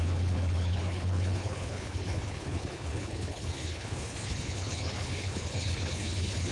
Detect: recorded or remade remade